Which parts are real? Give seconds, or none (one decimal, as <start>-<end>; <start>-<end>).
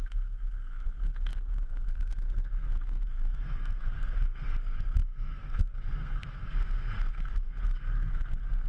none